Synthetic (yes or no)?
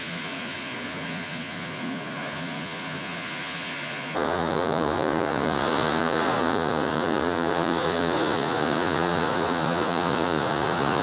yes